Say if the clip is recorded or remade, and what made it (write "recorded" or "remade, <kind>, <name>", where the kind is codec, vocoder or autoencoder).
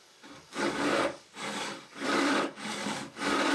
remade, codec, DAC